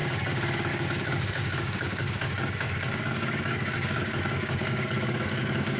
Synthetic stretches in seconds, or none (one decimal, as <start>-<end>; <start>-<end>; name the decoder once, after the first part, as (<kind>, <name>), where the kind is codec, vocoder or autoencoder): 0.0-5.8 (codec, DAC)